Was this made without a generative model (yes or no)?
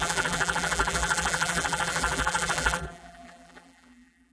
no